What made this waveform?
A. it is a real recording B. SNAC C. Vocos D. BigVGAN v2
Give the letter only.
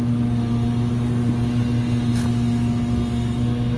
A